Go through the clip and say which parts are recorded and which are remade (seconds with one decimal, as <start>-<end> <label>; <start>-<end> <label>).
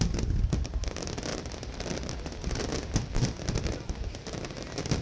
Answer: 0.0-5.0 recorded